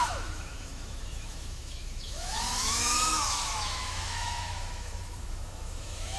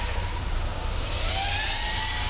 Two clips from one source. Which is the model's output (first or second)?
first